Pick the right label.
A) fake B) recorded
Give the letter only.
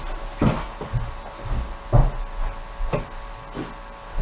B